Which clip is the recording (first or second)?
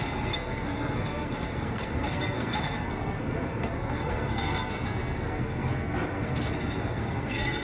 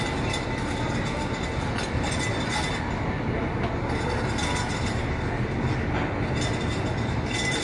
second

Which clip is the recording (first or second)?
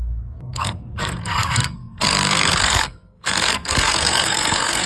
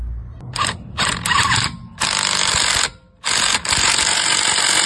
second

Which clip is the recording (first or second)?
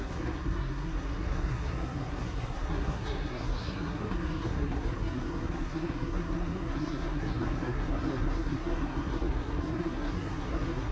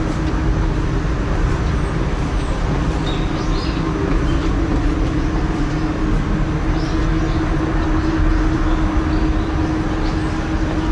second